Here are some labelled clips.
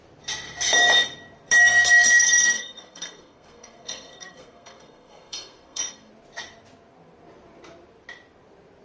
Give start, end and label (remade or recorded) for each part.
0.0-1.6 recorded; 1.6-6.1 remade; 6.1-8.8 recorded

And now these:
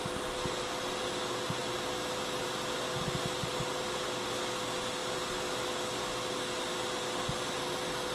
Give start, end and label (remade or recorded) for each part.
0.0-8.1 recorded

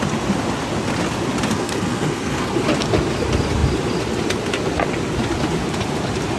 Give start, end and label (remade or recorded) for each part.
0.0-1.5 recorded; 1.5-2.5 remade; 2.5-6.4 recorded

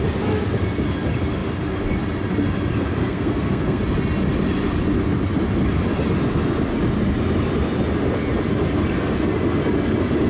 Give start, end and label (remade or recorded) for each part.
0.0-3.1 recorded; 3.1-3.8 remade; 3.8-10.3 recorded

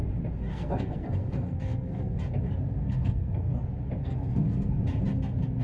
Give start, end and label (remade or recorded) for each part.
0.0-0.5 recorded; 0.5-2.2 remade; 2.2-2.8 recorded; 2.8-3.5 remade; 3.5-4.0 recorded; 4.0-4.8 remade; 4.8-5.6 recorded